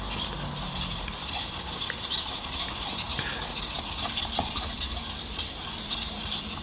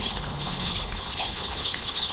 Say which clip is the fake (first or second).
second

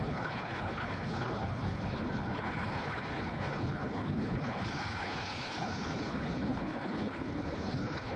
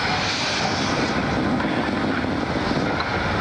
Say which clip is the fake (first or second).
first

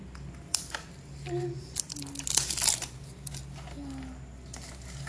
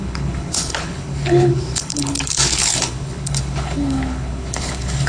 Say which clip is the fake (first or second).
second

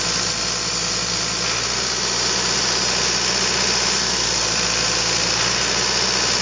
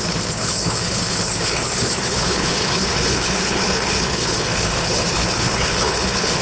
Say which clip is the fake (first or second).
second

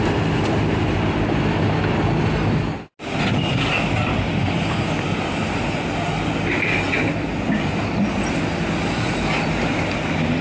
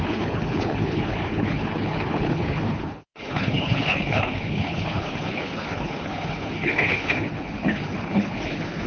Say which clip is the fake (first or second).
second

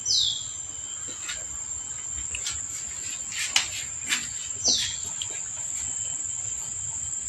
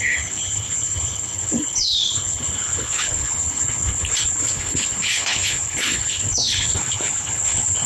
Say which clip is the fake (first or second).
second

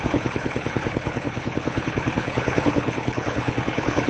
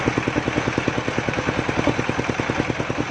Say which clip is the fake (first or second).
first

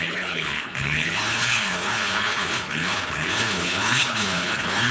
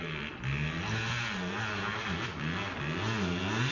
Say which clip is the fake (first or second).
first